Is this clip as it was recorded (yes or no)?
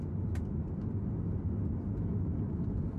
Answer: yes